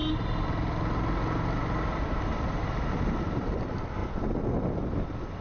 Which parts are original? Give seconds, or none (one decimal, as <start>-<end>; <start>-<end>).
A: 0.0-3.2; 4.0-4.7